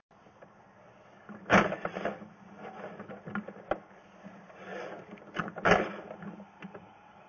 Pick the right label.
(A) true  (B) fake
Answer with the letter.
A